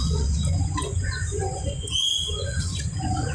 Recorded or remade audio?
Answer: remade